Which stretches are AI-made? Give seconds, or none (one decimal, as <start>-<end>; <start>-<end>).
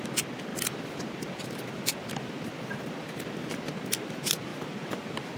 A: 4.5-5.4